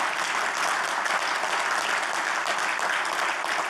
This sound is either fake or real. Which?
real